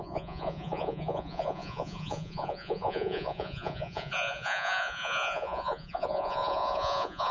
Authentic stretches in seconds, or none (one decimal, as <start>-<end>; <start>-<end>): none